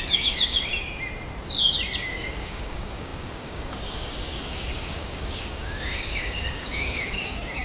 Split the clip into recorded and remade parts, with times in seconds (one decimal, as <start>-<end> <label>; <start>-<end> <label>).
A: 0.0-0.7 remade; 0.7-2.1 recorded; 2.1-7.6 remade